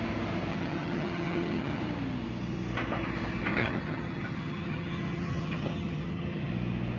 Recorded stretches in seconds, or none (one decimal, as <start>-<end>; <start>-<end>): 0.0-0.5; 1.8-3.5; 6.5-7.0